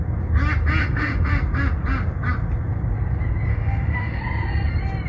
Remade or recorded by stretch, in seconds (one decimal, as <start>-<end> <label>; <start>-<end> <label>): 0.0-0.8 recorded; 0.8-1.3 remade; 1.3-3.5 recorded; 3.5-4.2 remade; 4.2-5.1 recorded